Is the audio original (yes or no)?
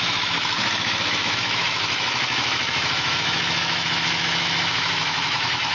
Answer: no